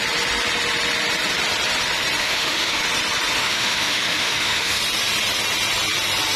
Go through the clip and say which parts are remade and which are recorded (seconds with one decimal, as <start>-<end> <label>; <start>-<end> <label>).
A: 0.0-2.2 recorded; 2.2-2.8 remade; 2.8-3.4 recorded; 3.4-4.8 remade; 4.8-6.4 recorded